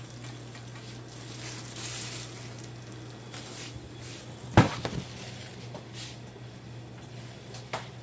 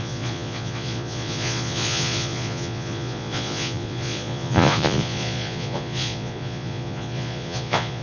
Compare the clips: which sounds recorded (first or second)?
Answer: first